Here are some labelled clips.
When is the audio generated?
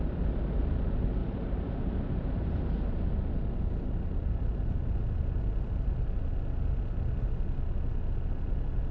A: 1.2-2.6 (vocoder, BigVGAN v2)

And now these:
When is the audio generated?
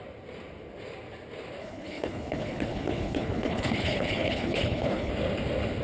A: 1.6-5.1 (codec, HILCodec)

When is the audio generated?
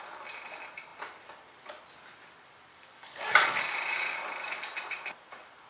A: 2.7-3.6 (codec, DAC)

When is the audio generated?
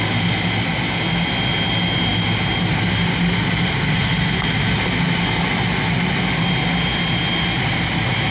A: none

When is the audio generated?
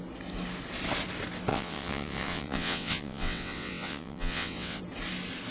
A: 1.5-4.8 (vocoder, WaveNeXt)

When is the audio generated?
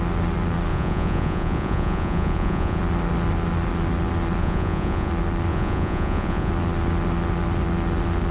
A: 0.7-2.8 (vocoder, Vocos); 4.4-5.1; 5.5-6.5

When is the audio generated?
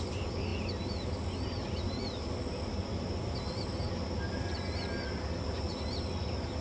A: none